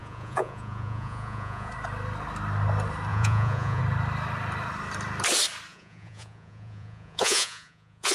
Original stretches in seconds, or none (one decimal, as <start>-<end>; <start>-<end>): 1.7-3.1; 3.8-5.7